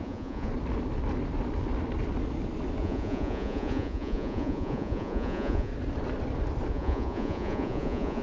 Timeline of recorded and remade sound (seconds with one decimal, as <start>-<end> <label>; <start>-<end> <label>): 0.0-0.5 remade; 0.5-2.8 recorded; 2.8-5.7 remade; 5.7-6.7 recorded; 6.7-8.2 remade